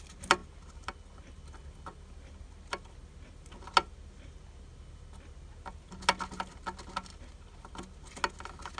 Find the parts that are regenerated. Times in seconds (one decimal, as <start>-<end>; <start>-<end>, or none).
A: none